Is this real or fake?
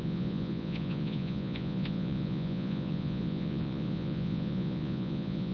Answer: fake